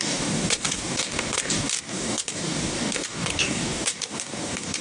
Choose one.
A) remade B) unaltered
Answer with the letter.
A